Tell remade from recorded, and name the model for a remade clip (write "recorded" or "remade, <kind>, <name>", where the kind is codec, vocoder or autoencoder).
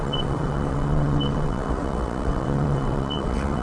remade, vocoder, WaveNeXt